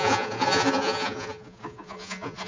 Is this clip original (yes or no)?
no